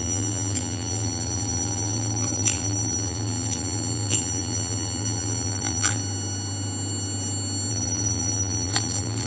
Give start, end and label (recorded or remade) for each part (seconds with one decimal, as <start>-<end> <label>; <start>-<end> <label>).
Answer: 0.0-6.0 remade; 6.0-7.7 recorded; 7.7-9.3 remade